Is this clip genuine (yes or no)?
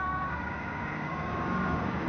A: no